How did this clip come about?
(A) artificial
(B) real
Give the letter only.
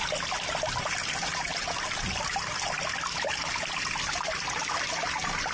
B